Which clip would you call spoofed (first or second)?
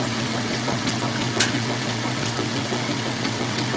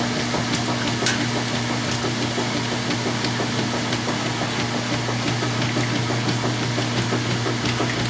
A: first